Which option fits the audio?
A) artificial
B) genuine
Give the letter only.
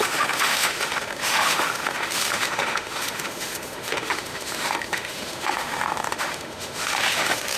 A